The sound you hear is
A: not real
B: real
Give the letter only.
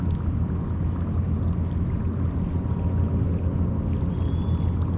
B